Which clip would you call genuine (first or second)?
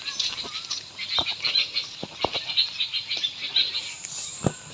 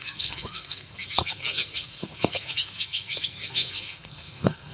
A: first